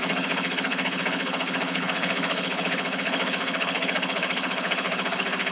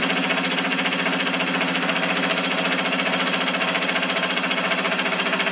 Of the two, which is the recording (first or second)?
second